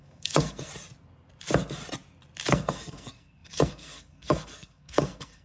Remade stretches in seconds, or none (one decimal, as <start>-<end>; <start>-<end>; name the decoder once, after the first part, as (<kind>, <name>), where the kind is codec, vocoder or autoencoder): 0.0-0.7 (codec, SNAC); 2.5-5.4